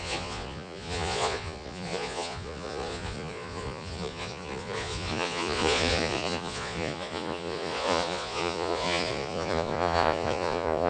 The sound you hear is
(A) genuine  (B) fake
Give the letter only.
B